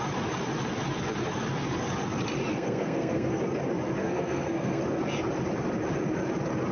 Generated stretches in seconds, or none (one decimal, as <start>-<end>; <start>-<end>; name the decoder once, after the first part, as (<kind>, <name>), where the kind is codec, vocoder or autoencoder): 2.5-3.4 (codec, SNAC); 4.0-4.8